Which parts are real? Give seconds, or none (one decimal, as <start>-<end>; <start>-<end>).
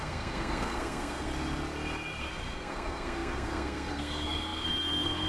1.3-2.2